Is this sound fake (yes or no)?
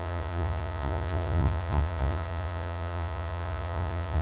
yes